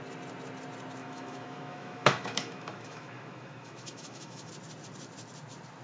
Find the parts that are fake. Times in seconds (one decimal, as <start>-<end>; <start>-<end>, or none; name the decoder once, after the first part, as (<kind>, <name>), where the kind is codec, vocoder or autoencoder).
1.0-4.5 (autoencoder, DAC-VAE)

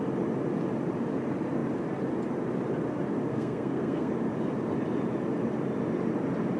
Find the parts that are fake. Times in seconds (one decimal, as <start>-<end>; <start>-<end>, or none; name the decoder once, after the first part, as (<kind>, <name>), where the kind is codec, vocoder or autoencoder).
3.3-4.1 (codec, SNAC)

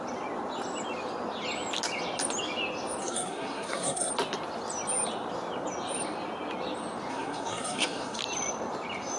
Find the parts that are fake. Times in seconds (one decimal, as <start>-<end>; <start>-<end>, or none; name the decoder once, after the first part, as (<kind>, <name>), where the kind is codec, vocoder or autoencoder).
3.0-4.1 (codec, SNAC); 7.1-8.2

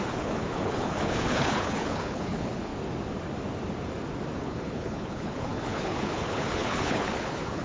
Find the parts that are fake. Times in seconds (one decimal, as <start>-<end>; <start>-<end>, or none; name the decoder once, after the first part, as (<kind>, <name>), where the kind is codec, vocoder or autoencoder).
0.0-2.7 (codec, HILCodec); 4.4-7.6

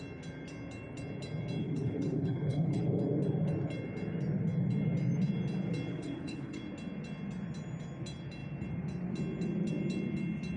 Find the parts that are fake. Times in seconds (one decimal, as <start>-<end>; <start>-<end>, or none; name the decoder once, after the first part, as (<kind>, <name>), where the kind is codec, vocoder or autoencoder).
1.6-3.0 (codec, HILCodec); 5.9-6.6

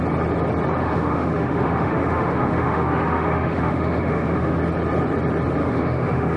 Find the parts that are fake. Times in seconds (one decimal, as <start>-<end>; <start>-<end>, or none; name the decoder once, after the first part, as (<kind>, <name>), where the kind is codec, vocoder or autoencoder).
0.8-4.6 (autoencoder, DAC-VAE); 5.6-6.4

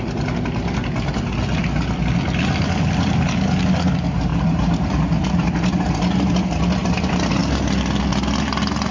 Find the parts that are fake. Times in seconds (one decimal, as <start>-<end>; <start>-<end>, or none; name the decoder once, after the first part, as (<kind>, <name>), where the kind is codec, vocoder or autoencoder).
4.3-6.3 (vocoder, BigVGAN v2)

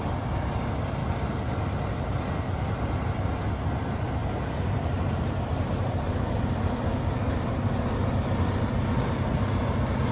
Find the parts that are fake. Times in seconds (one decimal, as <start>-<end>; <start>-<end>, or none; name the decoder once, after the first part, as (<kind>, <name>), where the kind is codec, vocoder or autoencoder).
1.0-2.2 (vocoder, BigVGAN v2); 4.2-8.1